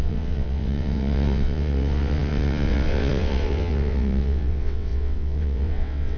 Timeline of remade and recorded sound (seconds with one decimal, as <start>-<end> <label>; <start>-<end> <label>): 0.0-6.2 remade